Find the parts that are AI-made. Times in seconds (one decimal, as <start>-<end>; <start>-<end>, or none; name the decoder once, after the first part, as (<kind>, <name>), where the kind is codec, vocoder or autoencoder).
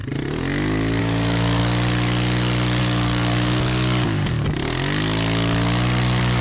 1.0-1.6 (codec, DAC); 2.8-4.2